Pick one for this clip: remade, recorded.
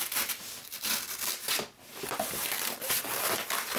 remade